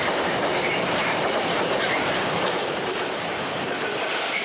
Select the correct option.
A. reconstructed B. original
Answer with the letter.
A